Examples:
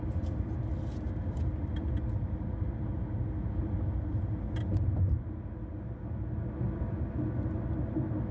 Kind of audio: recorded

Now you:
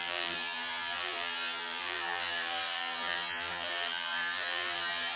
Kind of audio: remade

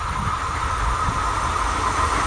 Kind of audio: recorded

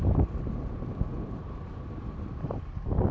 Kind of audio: remade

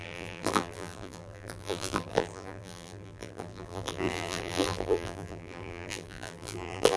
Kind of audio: remade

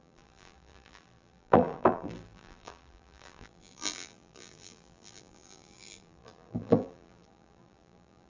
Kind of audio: remade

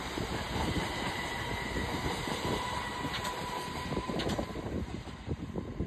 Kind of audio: remade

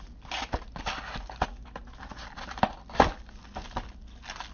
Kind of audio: recorded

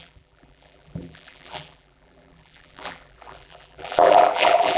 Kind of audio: remade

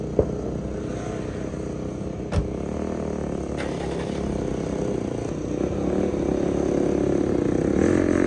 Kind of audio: recorded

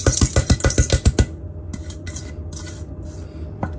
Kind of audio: recorded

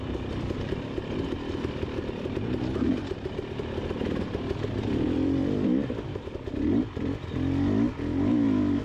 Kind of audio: remade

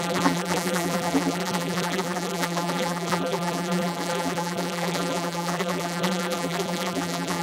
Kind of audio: remade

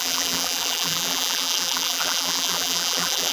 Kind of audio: remade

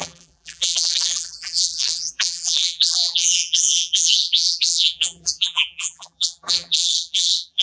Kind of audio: remade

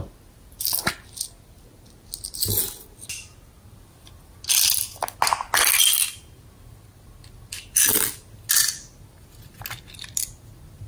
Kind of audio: recorded